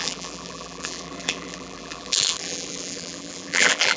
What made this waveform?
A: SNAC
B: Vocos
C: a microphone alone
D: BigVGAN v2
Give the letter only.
D